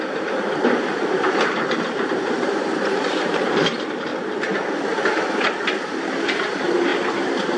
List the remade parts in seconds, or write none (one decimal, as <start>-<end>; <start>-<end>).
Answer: 0.0-4.1; 5.3-7.6